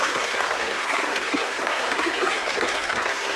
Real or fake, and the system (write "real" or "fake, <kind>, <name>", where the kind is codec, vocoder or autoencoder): fake, codec, SNAC